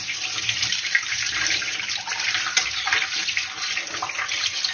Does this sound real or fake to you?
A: fake